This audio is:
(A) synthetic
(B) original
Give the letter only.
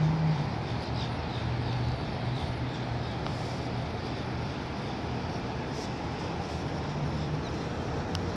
B